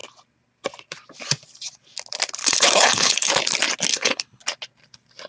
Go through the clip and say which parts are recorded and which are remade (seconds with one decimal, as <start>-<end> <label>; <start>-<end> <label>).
0.0-2.4 recorded; 2.4-3.3 remade; 3.3-3.9 recorded; 3.9-4.4 remade; 4.4-5.3 recorded